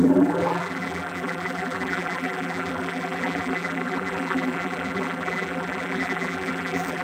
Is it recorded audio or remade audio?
remade